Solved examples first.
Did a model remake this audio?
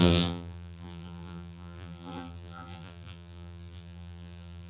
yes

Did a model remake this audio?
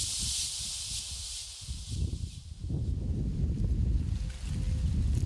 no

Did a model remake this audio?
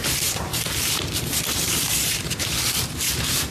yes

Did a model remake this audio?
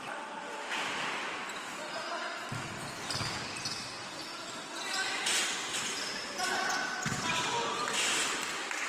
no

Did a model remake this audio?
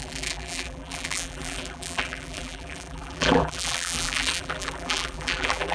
yes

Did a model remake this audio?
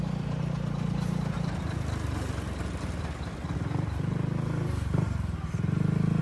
no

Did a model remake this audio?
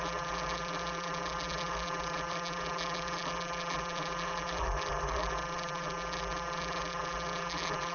yes